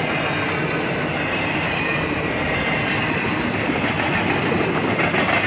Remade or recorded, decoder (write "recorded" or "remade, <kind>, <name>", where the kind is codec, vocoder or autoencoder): recorded